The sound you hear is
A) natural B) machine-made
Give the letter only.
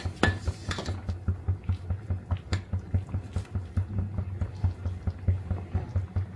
A